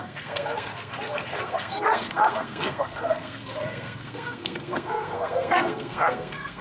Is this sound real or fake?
fake